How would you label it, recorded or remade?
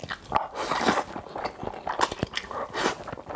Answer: recorded